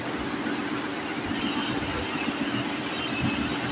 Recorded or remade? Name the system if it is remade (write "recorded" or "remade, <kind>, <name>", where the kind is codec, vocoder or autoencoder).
recorded